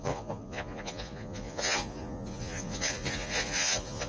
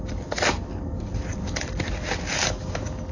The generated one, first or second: first